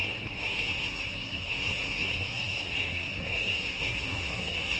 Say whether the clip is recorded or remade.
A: remade